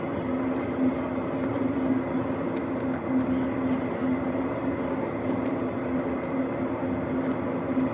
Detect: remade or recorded recorded